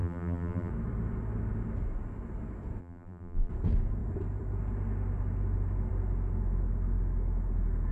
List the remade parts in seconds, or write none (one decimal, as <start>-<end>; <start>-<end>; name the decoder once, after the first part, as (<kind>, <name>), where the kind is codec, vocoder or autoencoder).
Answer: 0.0-0.7 (vocoder, BigVGAN v2); 2.8-3.5